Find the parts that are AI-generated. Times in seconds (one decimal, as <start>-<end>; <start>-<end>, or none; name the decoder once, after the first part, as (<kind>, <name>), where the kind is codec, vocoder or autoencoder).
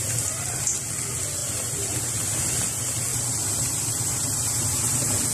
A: 1.4-2.0 (vocoder, BigVGAN v2); 3.1-5.3